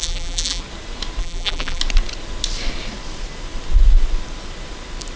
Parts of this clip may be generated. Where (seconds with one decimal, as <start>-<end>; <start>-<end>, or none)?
0.0-0.6; 1.2-1.8